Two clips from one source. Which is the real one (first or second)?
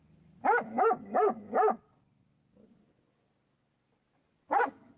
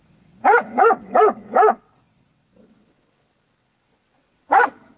first